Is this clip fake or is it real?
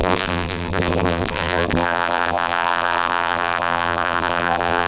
fake